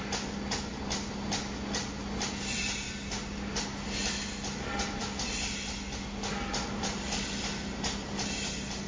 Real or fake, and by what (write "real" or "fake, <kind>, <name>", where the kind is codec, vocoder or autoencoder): real